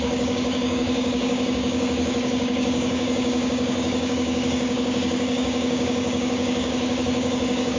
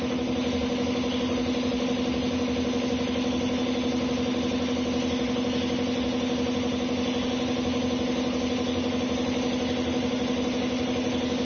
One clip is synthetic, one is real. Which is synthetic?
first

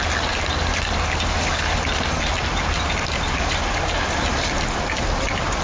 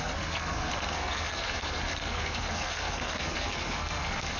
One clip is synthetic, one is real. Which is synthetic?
second